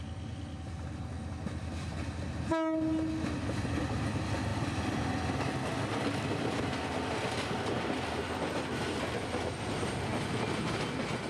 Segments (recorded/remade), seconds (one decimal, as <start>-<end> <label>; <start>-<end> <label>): 0.0-11.3 recorded